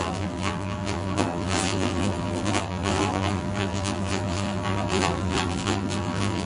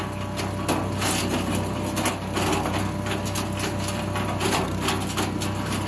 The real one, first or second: second